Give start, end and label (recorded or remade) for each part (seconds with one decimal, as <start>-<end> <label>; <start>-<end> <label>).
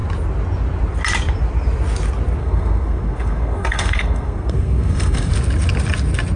0.0-2.4 recorded; 2.4-5.3 remade; 5.3-6.4 recorded